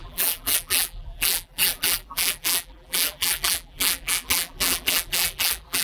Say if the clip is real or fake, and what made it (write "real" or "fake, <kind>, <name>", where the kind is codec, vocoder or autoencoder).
fake, vocoder, BigVGAN v2